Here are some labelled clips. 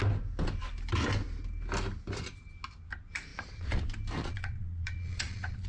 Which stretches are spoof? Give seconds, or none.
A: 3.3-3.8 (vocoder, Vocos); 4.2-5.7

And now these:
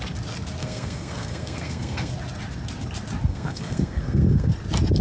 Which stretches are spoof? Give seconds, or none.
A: 0.6-2.1 (codec, SNAC); 3.3-4.5

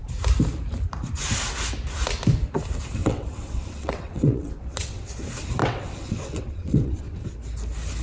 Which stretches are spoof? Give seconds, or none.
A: 3.0-5.1 (vocoder, WaveNeXt); 5.6-7.3

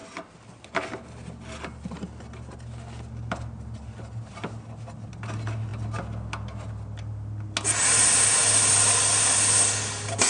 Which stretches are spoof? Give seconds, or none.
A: none

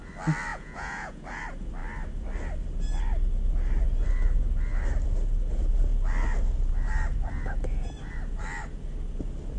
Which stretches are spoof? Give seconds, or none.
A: 0.5-1.4 (vocoder, Vocos)

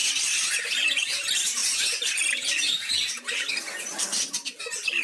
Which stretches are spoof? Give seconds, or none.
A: 0.0-0.6 (vocoder, BigVGAN v2); 1.6-4.6

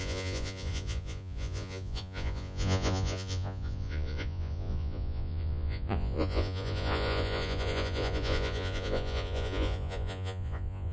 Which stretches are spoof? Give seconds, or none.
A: 0.0-10.9 (vocoder, Vocos)

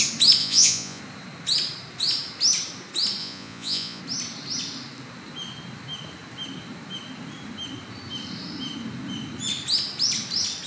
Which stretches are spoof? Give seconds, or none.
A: 0.4-1.0 (vocoder, Vocos); 3.2-4.0